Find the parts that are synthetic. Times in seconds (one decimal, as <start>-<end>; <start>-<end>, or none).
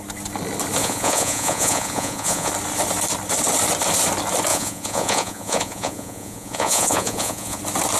0.8-2.5; 4.5-7.6